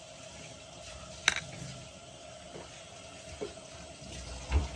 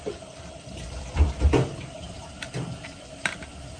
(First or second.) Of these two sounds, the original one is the first